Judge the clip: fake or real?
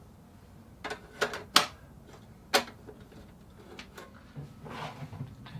real